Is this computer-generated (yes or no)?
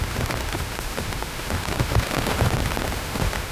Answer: yes